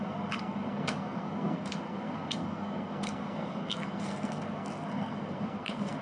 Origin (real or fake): fake